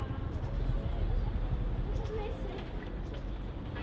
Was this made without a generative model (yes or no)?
yes